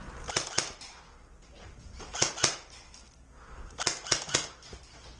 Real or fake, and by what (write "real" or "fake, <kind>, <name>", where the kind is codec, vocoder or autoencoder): real